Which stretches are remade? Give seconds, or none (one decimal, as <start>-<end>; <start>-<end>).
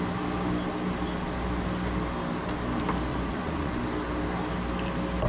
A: 3.1-3.7